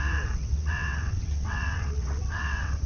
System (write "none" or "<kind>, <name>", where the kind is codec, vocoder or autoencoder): vocoder, WaveNeXt